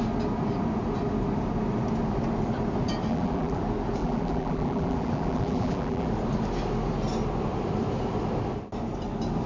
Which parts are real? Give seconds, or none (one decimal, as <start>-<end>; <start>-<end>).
0.0-3.1; 3.6-4.0; 6.1-9.5